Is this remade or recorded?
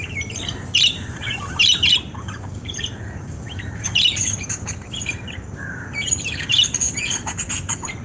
remade